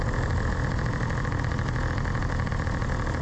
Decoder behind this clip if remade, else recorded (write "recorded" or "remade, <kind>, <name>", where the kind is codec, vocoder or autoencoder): recorded